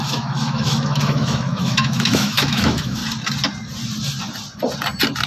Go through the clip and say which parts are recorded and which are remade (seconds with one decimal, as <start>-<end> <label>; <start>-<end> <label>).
0.0-3.0 remade; 3.0-5.3 recorded